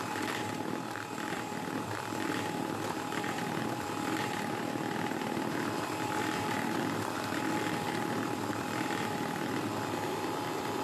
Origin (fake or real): fake